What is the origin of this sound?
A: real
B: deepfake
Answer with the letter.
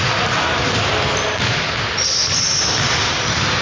A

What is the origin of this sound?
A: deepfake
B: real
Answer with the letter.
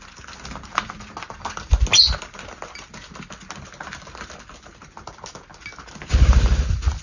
B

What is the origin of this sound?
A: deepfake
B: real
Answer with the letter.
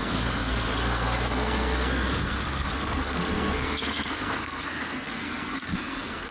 A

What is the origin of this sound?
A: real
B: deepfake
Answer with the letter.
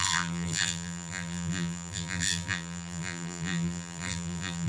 B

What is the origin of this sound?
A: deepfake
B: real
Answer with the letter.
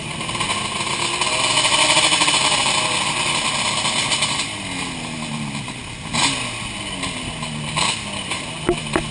B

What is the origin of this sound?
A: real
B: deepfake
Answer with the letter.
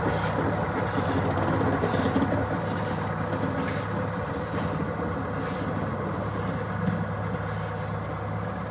A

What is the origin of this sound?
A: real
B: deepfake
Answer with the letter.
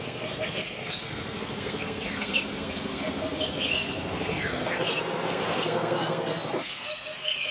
B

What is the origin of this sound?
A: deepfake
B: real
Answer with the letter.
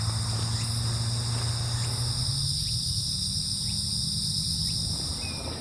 B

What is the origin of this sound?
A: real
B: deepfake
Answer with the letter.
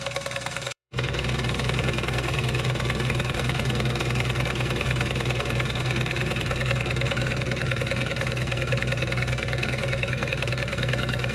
B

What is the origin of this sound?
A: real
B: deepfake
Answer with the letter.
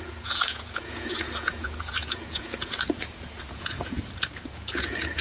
B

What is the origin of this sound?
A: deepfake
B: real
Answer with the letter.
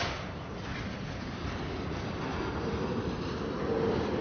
B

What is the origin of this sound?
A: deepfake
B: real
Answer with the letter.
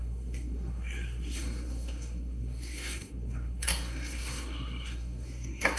A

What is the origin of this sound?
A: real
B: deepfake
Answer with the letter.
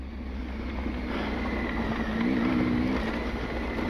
A